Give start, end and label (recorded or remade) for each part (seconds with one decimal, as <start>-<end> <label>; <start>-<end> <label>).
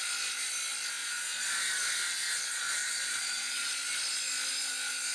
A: 0.0-1.0 recorded; 1.0-3.7 remade; 3.7-5.1 recorded